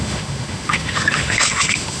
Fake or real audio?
fake